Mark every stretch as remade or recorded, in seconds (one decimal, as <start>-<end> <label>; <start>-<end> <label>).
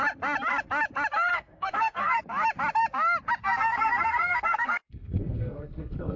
0.0-1.3 recorded; 1.3-2.2 remade; 2.2-3.4 recorded; 3.4-6.2 remade